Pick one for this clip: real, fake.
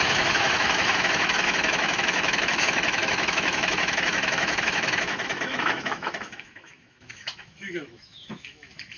fake